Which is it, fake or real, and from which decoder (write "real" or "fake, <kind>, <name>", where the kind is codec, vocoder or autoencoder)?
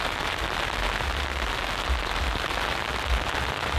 real